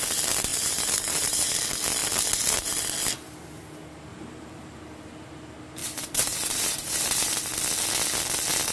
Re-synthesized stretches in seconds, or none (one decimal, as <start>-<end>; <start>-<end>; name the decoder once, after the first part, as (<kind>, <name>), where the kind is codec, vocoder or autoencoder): 0.5-1.6 (vocoder, BigVGAN v2); 4.1-4.8; 5.8-7.4